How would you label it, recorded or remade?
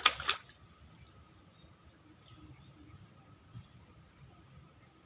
recorded